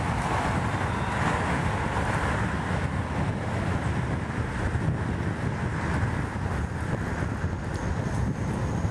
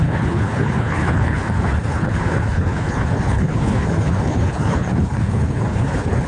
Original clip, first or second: first